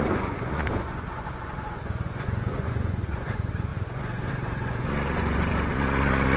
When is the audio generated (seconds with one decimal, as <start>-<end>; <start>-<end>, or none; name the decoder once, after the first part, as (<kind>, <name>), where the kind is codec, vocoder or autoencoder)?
0.0-6.4 (vocoder, Vocos)